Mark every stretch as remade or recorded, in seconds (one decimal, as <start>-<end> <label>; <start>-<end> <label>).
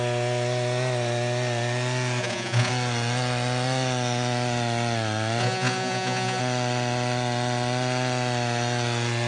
0.0-2.2 recorded; 2.2-2.7 remade; 2.7-5.4 recorded; 5.4-6.4 remade; 6.4-9.3 recorded